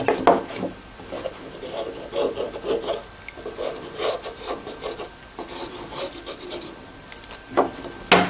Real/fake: real